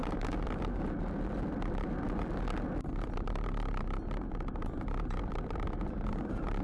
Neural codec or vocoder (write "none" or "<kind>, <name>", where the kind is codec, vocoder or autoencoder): vocoder, BigVGAN v2